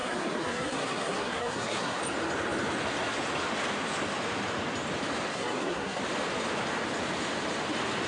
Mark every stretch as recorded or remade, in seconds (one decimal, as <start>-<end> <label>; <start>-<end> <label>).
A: 0.0-2.0 remade; 2.0-5.3 recorded; 5.3-6.0 remade; 6.0-8.1 recorded